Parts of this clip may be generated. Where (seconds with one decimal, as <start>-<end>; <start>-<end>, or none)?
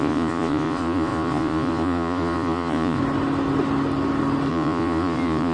0.0-3.0; 4.5-5.5